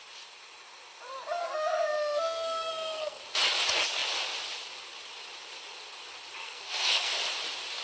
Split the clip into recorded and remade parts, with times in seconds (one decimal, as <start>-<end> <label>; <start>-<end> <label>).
0.0-1.4 recorded; 1.4-3.2 remade; 3.2-6.4 recorded; 6.4-7.2 remade; 7.2-7.8 recorded